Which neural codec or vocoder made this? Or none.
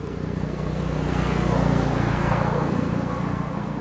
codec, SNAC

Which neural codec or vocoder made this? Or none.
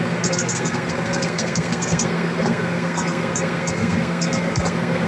codec, SNAC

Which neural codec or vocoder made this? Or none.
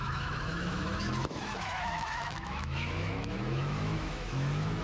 autoencoder, DAC-VAE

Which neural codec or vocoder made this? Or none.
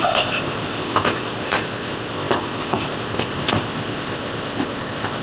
codec, ZipCodec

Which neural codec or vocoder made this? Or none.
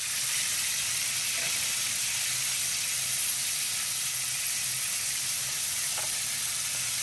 none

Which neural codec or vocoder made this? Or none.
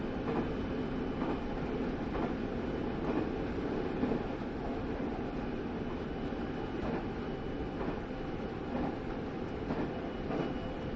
none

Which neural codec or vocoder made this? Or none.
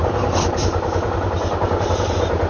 none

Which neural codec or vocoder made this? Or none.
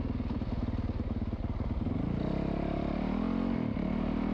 none